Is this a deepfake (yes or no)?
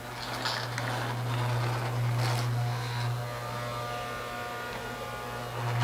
no